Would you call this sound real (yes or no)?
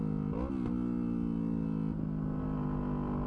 yes